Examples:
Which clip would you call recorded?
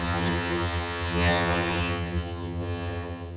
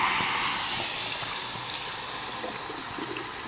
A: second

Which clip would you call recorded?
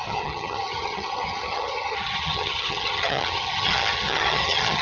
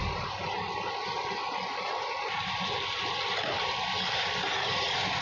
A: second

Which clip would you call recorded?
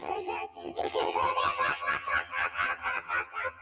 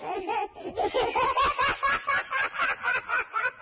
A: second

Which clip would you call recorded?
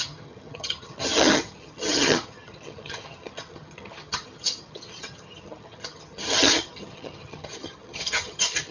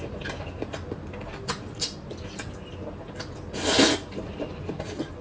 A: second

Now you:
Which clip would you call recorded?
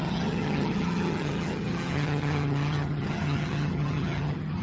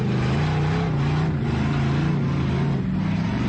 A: second